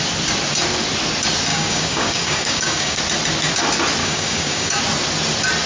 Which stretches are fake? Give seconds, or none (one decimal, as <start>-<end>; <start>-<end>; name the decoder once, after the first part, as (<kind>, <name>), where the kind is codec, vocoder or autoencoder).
1.5-3.0 (codec, DAC); 4.0-4.8